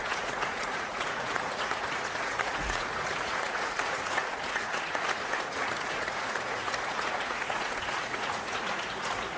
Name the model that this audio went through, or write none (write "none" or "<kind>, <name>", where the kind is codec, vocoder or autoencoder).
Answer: vocoder, Vocos